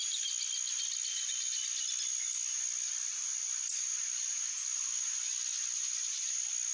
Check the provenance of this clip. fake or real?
real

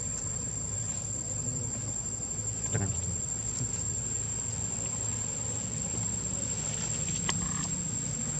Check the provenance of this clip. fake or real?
real